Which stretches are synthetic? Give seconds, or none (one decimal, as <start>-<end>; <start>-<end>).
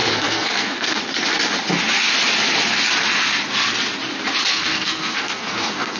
0.0-1.0; 4.5-6.0